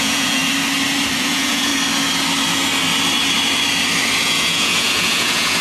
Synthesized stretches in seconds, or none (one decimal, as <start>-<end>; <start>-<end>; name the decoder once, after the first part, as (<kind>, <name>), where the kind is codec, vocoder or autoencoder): 0.0-0.4 (vocoder, Vocos); 1.2-1.7; 4.2-5.6